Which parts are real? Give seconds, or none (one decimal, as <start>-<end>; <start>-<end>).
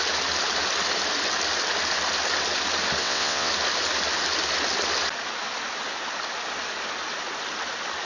0.0-3.0; 3.5-8.0